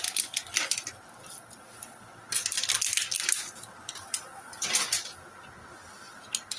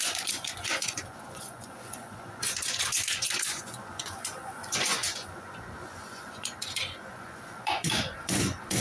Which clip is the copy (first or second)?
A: second